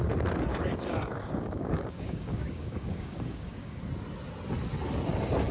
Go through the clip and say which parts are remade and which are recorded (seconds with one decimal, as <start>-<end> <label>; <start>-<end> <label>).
0.0-0.5 recorded; 0.5-3.8 remade; 3.8-5.5 recorded